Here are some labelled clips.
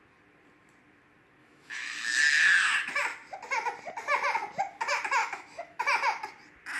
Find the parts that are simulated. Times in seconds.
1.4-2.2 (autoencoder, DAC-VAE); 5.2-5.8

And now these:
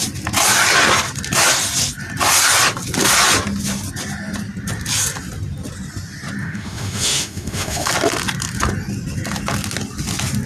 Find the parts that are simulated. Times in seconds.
6.4-7.9 (autoencoder, DAC-VAE)

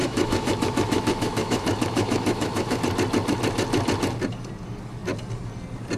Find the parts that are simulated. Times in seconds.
0.0-2.8 (autoencoder, DAC-VAE)

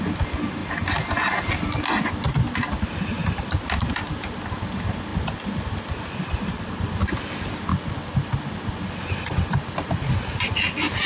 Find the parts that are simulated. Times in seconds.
none

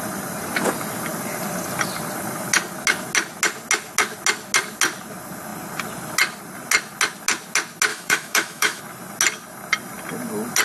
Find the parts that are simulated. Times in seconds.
7.9-8.8 (autoencoder, DAC-VAE)

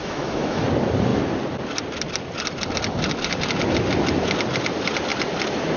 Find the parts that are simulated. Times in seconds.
0.0-0.6 (autoencoder, DAC-VAE)